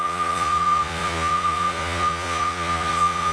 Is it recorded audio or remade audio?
remade